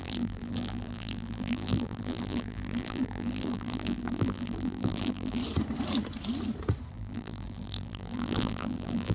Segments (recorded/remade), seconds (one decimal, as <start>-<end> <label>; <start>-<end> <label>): 0.0-5.4 remade; 5.4-6.9 recorded; 6.9-9.1 remade